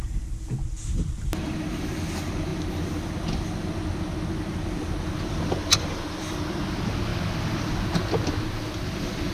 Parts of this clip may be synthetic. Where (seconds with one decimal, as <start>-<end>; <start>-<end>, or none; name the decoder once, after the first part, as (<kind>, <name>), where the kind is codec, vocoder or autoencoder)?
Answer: none